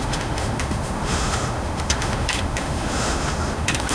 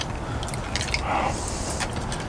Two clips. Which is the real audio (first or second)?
second